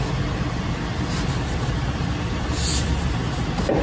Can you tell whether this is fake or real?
real